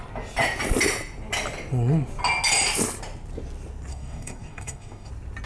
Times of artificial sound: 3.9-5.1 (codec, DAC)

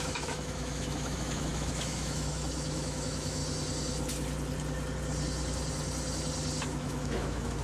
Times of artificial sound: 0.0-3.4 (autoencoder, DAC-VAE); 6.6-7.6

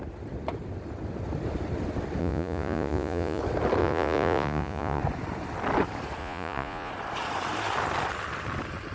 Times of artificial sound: 2.2-3.4 (vocoder, Vocos); 3.8-5.0; 6.2-6.9